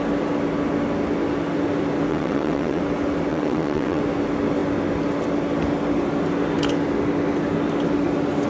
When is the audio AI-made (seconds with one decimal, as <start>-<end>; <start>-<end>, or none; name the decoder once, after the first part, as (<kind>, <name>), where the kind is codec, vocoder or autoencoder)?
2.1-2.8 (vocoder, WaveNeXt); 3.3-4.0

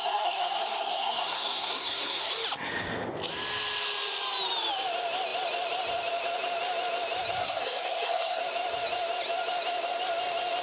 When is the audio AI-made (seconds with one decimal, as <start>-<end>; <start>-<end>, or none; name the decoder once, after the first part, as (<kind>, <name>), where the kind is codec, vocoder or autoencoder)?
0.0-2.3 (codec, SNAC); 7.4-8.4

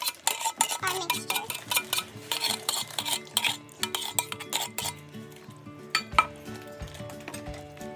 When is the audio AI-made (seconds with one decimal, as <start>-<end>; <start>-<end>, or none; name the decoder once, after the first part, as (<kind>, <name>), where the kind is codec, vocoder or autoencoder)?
2.0-3.3 (vocoder, BigVGAN v2)

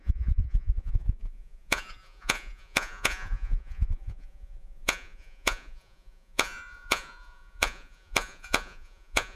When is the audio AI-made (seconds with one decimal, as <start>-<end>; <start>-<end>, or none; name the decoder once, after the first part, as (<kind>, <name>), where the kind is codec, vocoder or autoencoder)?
0.0-9.4 (vocoder, Vocos)

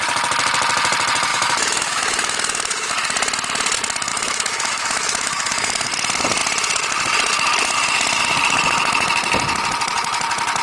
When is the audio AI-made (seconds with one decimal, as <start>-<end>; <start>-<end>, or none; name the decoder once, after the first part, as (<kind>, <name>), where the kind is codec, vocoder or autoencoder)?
1.3-2.9 (autoencoder, DAC-VAE); 4.1-5.9

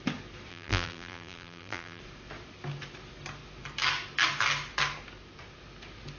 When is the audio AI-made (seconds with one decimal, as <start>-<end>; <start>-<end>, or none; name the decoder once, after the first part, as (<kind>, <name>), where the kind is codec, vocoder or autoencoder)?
0.5-2.0 (vocoder, BigVGAN v2)

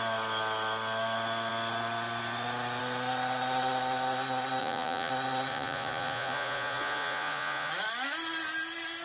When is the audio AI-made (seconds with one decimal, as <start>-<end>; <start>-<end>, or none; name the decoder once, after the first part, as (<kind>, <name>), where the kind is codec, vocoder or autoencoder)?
4.6-5.1 (vocoder, Vocos); 5.5-7.7